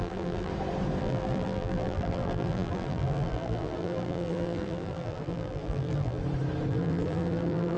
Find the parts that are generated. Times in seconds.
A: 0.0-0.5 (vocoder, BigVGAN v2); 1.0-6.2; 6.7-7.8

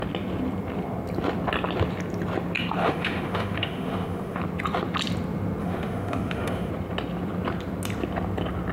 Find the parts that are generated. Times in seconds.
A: 2.8-4.4 (autoencoder, DAC-VAE); 5.6-6.7